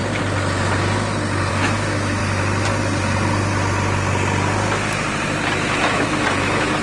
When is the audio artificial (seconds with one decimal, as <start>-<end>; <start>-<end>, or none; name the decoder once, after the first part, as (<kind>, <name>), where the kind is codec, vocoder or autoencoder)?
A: 1.5-2.2 (autoencoder, DAC-VAE); 5.8-6.8